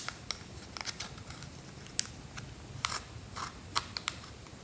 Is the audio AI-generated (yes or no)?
no